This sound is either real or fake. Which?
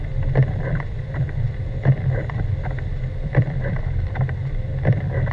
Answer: fake